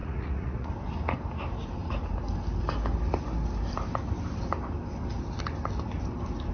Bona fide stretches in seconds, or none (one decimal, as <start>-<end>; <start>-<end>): 0.7-6.5